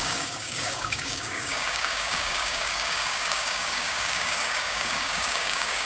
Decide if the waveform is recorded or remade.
remade